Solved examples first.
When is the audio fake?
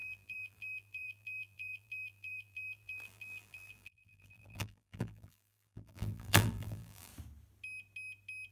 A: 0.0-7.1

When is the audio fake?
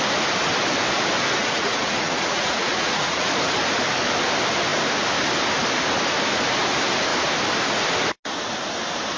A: 1.4-3.3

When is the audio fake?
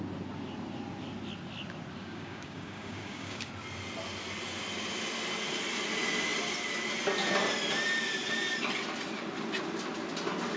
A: 2.0-3.5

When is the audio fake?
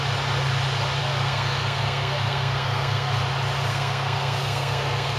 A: 1.0-3.2; 3.7-5.2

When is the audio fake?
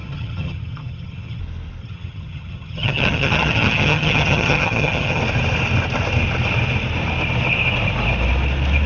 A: 0.0-1.4; 1.8-5.2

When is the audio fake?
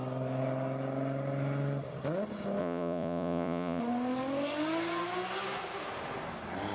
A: 2.6-3.8